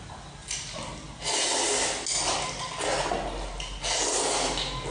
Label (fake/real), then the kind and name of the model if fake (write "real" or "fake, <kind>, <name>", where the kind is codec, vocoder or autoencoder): real